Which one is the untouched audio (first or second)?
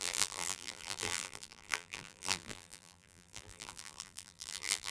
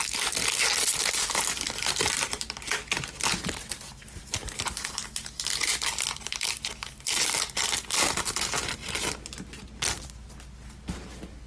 second